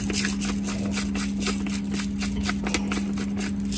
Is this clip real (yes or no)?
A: yes